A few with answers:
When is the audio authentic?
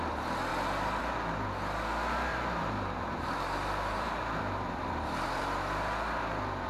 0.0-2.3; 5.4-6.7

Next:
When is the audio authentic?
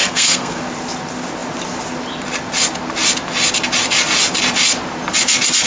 0.6-5.7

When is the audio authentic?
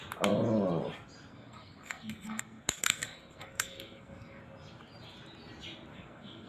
0.0-1.3; 4.4-5.9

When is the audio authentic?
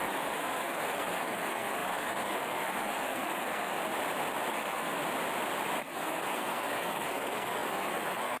3.8-4.5; 5.0-5.8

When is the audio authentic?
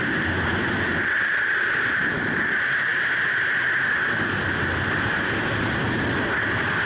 0.0-6.9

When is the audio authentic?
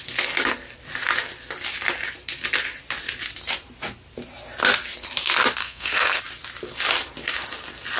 0.0-5.6; 6.2-8.0